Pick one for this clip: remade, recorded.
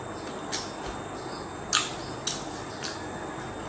recorded